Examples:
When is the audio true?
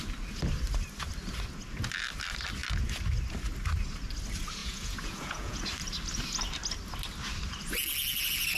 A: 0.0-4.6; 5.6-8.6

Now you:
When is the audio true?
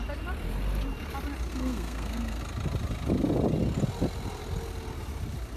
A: 0.0-1.5; 2.4-5.6